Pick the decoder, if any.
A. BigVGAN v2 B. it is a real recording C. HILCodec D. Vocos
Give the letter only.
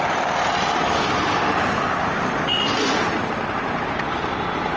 B